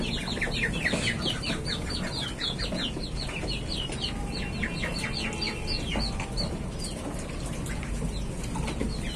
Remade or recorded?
recorded